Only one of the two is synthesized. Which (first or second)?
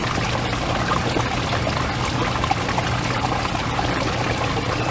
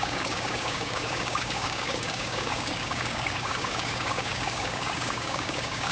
second